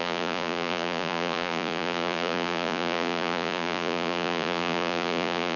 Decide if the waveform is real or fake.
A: fake